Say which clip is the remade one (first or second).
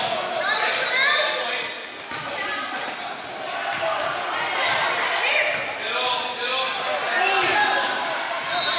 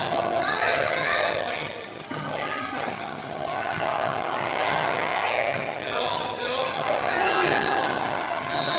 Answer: second